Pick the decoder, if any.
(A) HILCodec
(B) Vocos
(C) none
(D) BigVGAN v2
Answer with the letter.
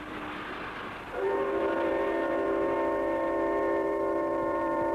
C